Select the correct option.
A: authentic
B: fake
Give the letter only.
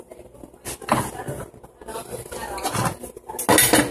A